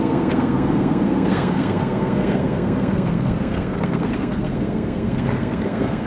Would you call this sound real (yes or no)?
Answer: no